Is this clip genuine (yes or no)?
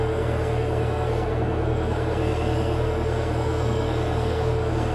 no